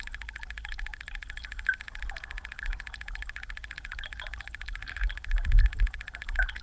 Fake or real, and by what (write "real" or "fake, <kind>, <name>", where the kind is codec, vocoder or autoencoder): real